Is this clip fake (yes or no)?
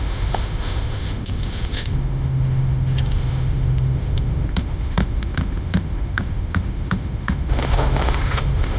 yes